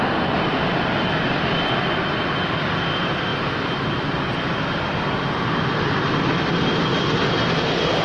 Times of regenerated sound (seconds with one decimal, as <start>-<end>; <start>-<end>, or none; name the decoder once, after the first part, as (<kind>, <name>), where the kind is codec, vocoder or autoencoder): none